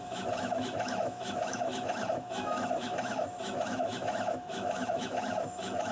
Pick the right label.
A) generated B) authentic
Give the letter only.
A